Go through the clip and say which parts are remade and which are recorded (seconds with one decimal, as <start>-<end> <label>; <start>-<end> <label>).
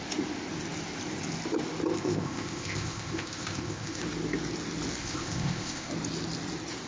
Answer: 0.0-1.9 recorded; 1.9-4.0 remade; 4.0-5.0 recorded; 5.0-5.9 remade; 5.9-6.9 recorded